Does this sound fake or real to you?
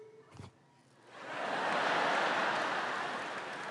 real